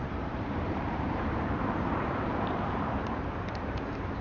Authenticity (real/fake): fake